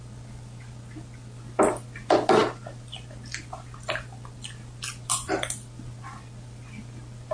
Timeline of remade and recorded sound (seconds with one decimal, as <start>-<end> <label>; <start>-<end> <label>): 0.0-7.3 recorded